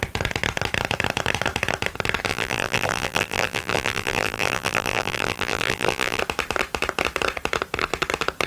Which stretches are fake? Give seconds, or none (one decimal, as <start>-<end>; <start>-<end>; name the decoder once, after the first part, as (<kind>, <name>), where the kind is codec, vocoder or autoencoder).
2.3-6.2 (vocoder, BigVGAN v2)